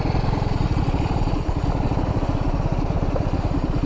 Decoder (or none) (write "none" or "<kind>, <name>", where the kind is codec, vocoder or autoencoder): none